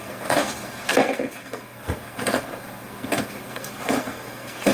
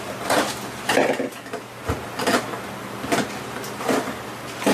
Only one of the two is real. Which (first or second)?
second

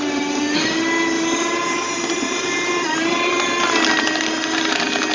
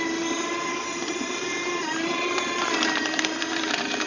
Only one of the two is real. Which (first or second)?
first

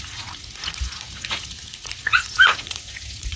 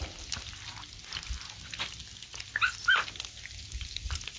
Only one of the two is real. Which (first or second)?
second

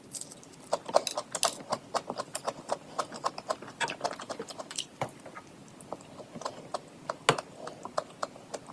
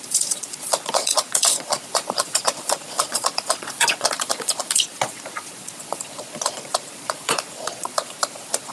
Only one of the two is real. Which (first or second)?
first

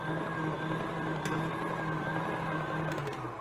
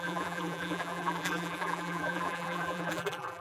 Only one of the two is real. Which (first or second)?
first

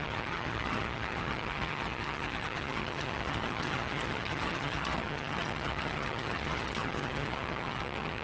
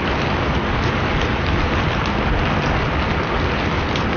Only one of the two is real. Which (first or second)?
second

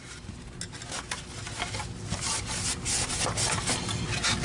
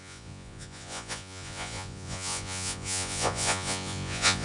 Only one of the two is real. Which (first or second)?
first